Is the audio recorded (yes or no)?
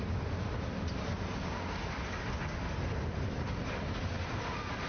yes